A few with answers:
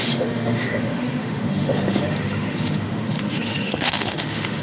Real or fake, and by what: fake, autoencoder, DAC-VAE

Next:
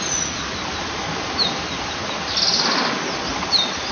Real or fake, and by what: real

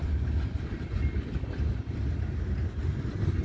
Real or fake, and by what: real